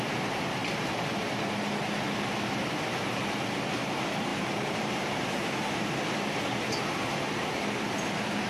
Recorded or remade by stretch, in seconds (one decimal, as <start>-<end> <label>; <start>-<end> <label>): 0.0-0.6 remade; 0.6-2.4 recorded; 2.4-8.5 remade